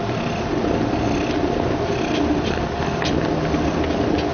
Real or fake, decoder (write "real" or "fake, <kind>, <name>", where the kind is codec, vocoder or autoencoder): real